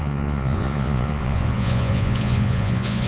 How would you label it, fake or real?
fake